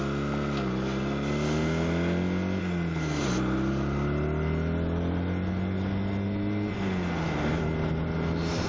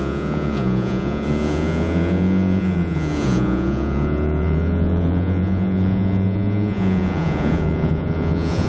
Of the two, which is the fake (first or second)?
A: second